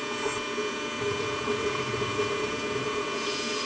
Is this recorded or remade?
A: remade